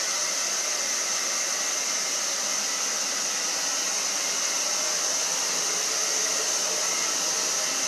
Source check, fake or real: fake